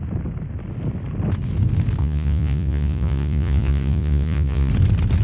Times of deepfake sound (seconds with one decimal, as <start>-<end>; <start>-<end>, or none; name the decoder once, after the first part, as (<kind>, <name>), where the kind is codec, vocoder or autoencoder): 2.0-4.7 (vocoder, Vocos)